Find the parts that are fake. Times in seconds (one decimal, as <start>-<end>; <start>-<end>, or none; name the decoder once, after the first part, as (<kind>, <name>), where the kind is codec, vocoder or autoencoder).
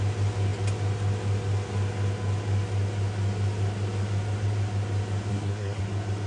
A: 5.3-5.8 (codec, SNAC)